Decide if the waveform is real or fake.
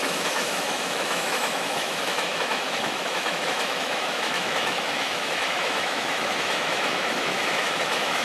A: fake